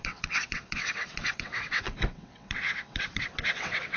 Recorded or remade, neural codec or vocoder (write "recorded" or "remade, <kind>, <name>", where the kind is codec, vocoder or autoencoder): remade, vocoder, WaveNeXt